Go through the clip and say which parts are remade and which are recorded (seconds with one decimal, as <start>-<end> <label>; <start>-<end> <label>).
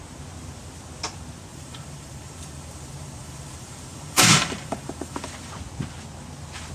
0.0-1.5 recorded; 1.5-5.5 remade; 5.5-6.7 recorded